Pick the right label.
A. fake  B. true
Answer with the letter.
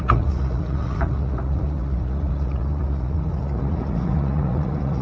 A